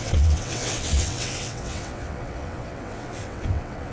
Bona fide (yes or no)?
no